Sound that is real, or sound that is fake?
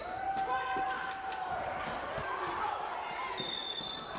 fake